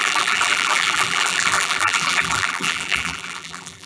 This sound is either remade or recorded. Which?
remade